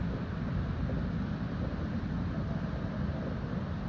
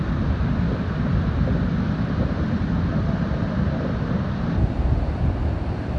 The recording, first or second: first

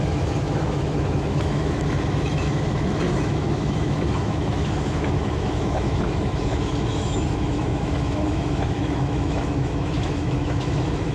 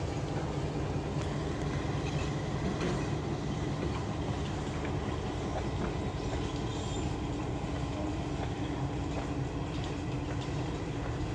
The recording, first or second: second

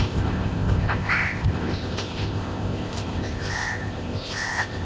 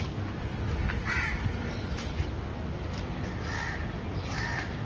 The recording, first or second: second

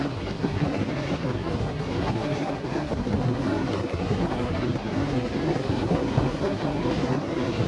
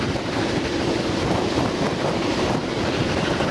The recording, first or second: second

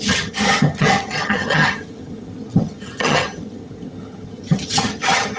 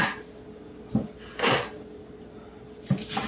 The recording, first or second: second